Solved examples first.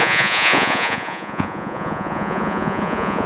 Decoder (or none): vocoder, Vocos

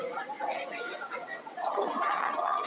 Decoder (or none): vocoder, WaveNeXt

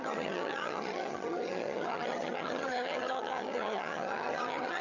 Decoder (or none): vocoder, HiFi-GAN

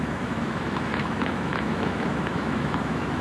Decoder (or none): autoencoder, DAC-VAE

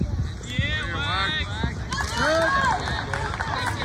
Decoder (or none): none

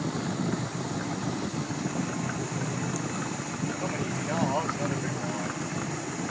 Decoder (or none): none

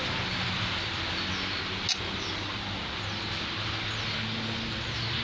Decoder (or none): none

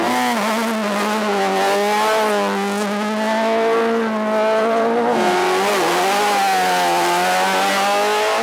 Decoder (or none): none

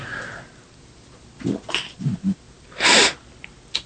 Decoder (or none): none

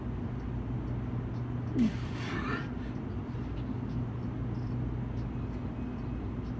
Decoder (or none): none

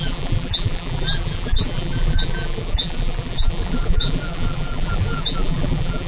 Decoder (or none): vocoder, BigVGAN v2